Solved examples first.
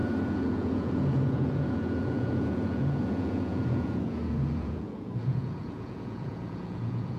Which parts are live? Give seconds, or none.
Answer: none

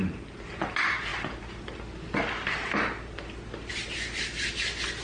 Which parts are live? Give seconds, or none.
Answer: 0.0-5.0

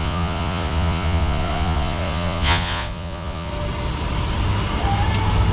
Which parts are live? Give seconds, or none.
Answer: 3.5-5.5

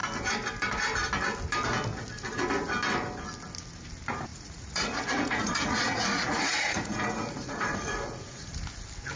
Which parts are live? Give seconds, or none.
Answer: 0.0-4.3; 8.6-9.2

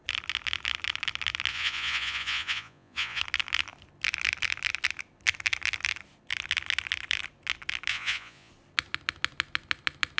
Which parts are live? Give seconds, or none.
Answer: 0.0-1.5; 3.2-7.9; 8.5-10.2

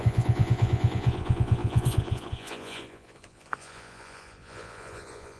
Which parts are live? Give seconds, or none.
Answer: none

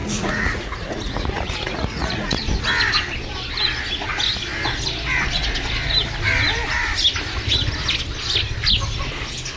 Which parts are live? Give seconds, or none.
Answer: 2.4-9.6

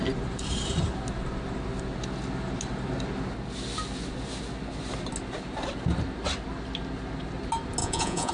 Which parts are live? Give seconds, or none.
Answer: 0.0-7.8